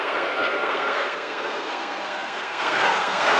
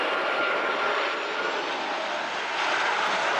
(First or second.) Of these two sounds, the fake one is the first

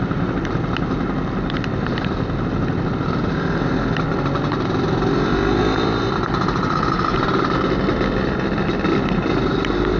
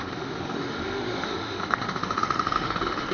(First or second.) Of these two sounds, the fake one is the second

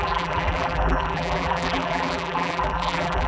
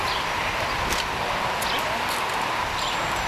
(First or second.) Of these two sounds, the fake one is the first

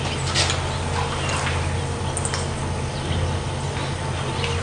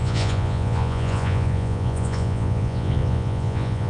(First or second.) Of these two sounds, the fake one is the second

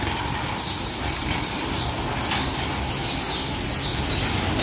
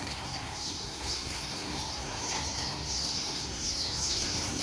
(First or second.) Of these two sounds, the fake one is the second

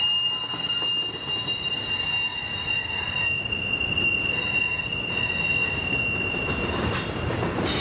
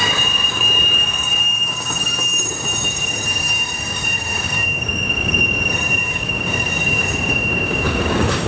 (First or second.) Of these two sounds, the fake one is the second